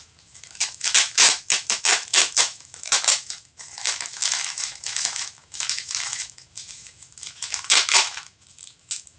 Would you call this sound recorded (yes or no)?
no